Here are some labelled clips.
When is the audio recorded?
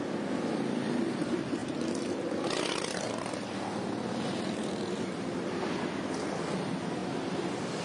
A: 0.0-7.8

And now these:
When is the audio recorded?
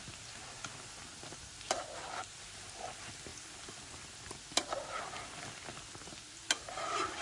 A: 0.0-7.2